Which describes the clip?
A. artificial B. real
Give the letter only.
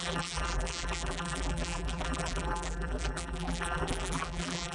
A